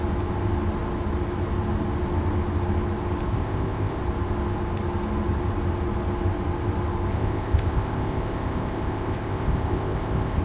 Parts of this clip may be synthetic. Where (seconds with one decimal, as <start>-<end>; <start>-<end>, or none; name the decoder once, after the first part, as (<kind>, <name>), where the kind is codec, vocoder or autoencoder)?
3.3-4.0 (codec, ZipCodec); 7.1-10.4